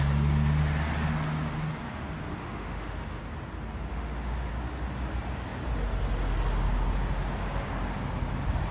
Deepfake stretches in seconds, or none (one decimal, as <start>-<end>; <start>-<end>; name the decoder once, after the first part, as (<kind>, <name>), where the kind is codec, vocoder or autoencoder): 2.4-3.2 (autoencoder, DAC-VAE); 3.9-4.5